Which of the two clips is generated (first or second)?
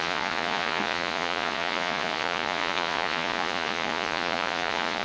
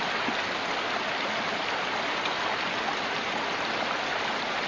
first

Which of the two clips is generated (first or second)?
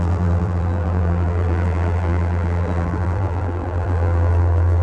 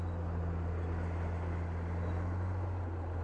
first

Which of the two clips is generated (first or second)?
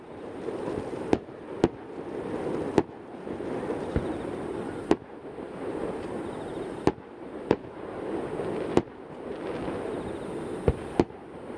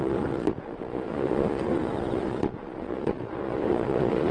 second